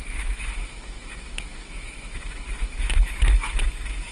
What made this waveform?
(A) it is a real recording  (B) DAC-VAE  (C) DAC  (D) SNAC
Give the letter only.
B